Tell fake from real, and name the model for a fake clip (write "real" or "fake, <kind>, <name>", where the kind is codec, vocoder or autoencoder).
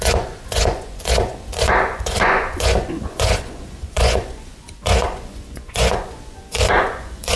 fake, vocoder, Vocos